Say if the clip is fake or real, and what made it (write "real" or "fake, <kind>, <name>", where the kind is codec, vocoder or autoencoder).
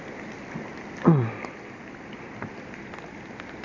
real